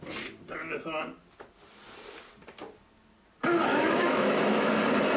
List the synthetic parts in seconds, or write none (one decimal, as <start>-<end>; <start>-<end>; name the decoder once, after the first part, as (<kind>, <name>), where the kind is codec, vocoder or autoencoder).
3.7-4.7 (autoencoder, DAC-VAE)